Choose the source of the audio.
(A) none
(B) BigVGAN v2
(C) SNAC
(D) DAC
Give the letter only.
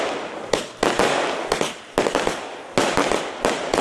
A